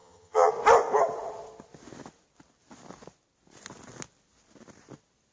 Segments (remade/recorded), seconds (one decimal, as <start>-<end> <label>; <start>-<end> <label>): 0.0-0.5 remade; 0.5-5.3 recorded